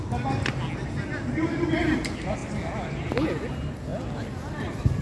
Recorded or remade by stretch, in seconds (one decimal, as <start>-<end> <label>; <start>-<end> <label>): 0.0-5.0 recorded